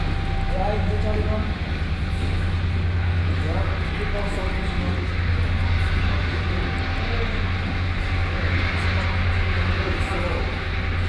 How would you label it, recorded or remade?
recorded